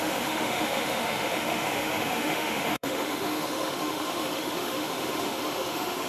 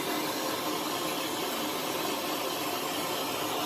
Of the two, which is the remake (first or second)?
first